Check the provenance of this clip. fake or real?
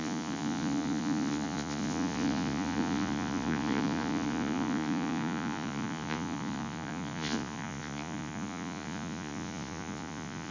fake